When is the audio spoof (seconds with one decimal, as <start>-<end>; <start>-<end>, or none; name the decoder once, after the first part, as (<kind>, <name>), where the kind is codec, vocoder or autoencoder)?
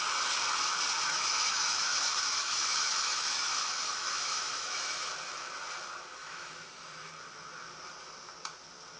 1.0-5.1 (autoencoder, DAC-VAE); 6.2-7.1